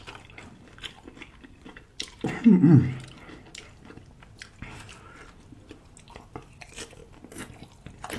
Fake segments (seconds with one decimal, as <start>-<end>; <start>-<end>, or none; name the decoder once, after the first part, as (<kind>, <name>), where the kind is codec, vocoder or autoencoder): none

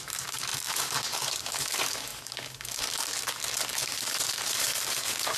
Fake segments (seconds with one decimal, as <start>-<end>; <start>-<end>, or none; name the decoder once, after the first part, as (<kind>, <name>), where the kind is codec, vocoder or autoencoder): 0.0-5.4 (codec, DAC)

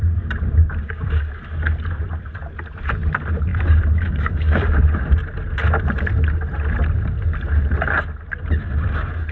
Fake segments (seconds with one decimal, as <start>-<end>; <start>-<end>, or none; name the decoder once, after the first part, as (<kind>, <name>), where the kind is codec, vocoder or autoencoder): 0.8-1.4 (codec, DAC); 3.5-4.8